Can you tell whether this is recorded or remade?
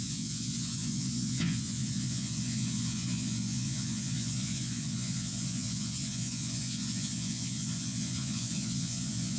remade